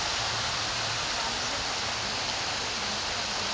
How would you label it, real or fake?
real